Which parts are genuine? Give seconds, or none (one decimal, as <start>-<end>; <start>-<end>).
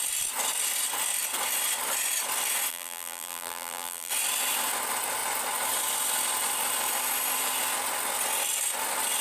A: 0.0-2.7; 4.1-9.2